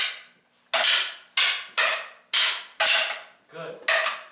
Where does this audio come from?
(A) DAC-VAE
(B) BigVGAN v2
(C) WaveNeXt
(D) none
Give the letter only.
D